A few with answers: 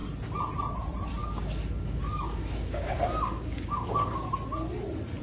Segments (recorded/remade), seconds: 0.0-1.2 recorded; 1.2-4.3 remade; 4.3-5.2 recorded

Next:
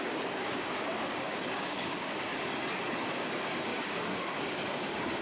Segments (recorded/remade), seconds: 0.0-2.3 remade; 2.3-3.1 recorded; 3.1-5.2 remade

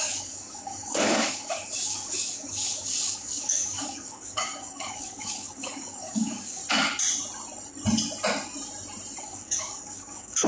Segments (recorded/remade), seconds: 0.0-6.6 remade; 6.6-9.2 recorded; 9.2-10.5 remade